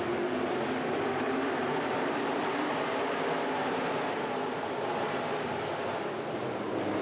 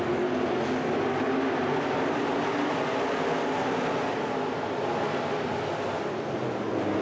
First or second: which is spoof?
first